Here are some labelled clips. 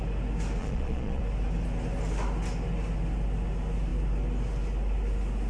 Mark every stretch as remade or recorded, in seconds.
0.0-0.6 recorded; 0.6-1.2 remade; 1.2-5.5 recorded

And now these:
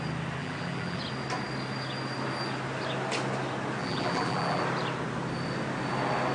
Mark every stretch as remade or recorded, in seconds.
0.0-0.4 recorded; 0.4-1.0 remade; 1.0-3.8 recorded; 3.8-4.6 remade; 4.6-6.3 recorded

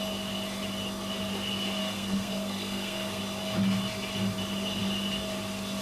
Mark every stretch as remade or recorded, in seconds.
0.0-1.8 recorded; 1.8-3.2 remade; 3.2-5.8 recorded

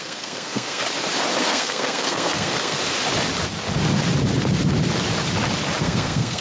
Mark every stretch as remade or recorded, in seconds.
0.0-0.8 remade; 0.8-1.4 recorded; 1.4-2.8 remade; 2.8-5.8 recorded; 5.8-6.4 remade

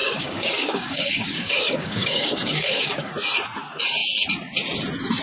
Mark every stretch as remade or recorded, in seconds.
0.0-3.1 remade; 3.1-5.2 recorded

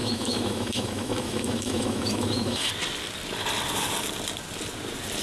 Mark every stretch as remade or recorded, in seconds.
0.0-2.7 remade; 2.7-5.2 recorded

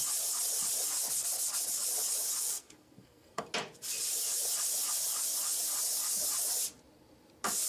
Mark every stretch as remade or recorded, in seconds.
0.0-2.4 recorded; 2.4-3.4 remade; 3.4-7.7 recorded